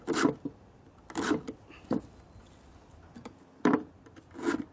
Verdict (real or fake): real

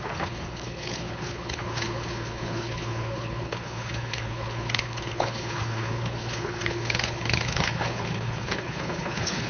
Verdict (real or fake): fake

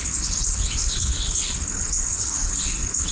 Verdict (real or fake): fake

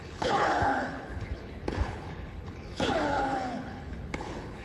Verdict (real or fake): fake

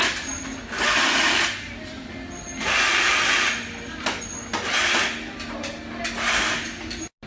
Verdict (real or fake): real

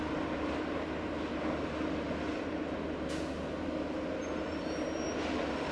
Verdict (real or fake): real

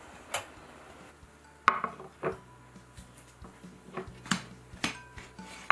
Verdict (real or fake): real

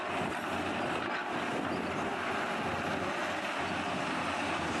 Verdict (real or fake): real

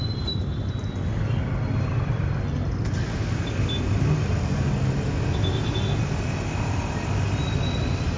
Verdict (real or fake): real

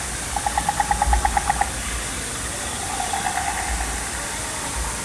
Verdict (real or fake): real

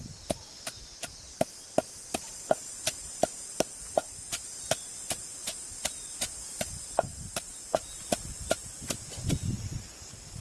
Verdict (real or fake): real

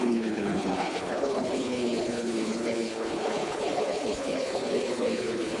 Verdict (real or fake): fake